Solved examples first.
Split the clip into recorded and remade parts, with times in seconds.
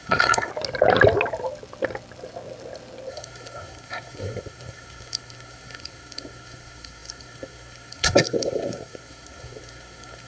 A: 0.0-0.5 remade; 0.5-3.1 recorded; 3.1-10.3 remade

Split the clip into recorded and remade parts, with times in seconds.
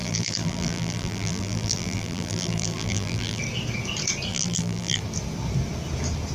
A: 0.0-3.4 remade; 3.4-4.3 recorded; 4.3-5.0 remade; 5.0-6.3 recorded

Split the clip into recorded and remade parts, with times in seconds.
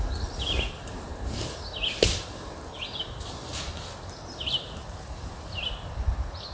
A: 0.0-6.5 recorded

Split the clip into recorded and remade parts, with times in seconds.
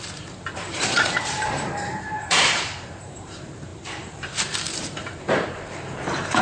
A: 0.0-6.4 remade